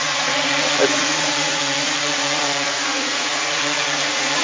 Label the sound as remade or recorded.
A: remade